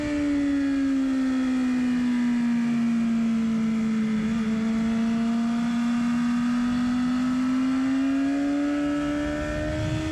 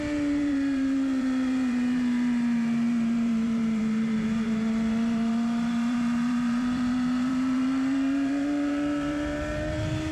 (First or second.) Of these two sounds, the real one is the first